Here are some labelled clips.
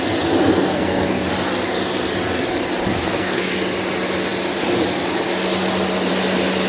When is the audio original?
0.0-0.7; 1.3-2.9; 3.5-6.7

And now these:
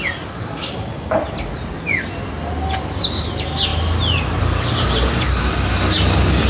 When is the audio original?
0.0-6.5

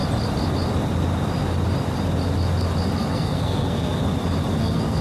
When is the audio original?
0.0-3.0; 4.0-4.6